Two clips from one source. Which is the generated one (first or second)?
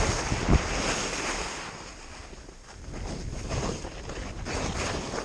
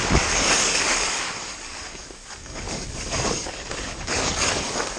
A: second